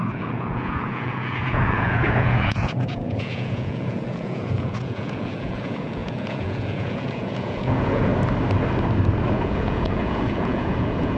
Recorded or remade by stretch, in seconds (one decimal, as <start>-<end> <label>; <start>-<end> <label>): 0.0-8.1 remade; 8.1-9.3 recorded; 9.3-11.2 remade